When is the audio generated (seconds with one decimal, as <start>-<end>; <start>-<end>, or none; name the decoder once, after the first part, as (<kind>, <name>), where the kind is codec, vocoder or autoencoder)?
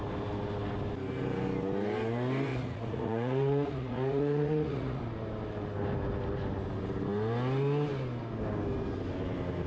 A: 2.5-5.0 (vocoder, Vocos)